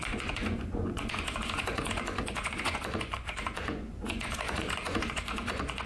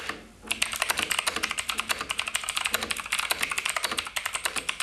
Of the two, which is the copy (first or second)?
first